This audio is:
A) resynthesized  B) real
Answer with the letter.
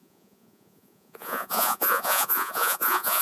A